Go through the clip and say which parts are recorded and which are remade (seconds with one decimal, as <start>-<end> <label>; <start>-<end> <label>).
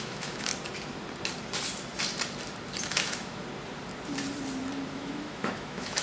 0.0-0.5 remade; 0.5-2.9 recorded; 2.9-3.4 remade; 3.4-4.9 recorded; 4.9-6.0 remade